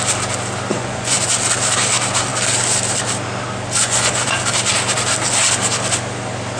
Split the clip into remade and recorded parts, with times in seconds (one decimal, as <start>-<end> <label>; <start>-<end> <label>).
0.0-0.7 recorded; 0.7-1.3 remade; 1.3-3.8 recorded; 3.8-4.4 remade; 4.4-6.6 recorded